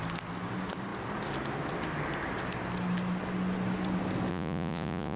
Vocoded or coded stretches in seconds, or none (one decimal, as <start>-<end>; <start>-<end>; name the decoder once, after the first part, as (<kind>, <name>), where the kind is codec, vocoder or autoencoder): 4.3-5.2 (vocoder, Vocos)